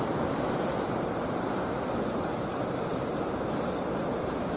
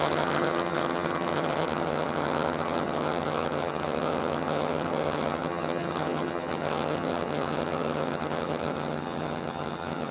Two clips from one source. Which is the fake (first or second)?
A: second